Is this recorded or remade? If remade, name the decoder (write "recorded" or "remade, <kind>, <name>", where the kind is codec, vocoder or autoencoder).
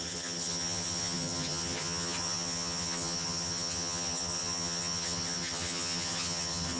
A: remade, vocoder, HiFi-GAN